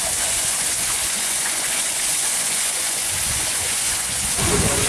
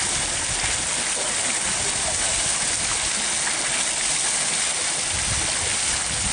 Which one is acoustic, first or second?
second